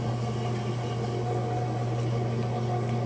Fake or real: real